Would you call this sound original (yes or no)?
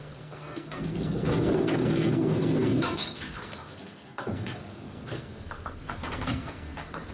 no